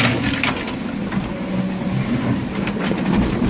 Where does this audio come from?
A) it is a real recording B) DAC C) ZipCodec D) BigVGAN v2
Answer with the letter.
A